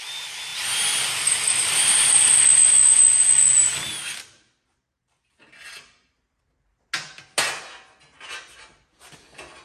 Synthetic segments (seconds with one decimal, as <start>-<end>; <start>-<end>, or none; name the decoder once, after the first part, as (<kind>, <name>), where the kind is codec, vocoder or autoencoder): none